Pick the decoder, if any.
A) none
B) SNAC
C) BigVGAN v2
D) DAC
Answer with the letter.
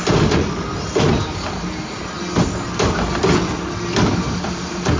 A